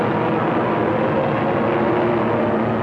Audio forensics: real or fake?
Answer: real